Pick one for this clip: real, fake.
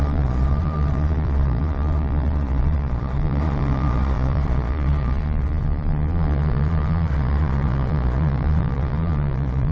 fake